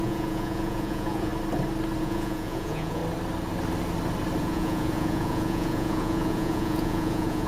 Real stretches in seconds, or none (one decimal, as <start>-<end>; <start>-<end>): 1.3-2.0; 3.0-4.4